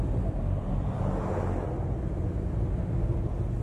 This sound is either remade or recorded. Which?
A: recorded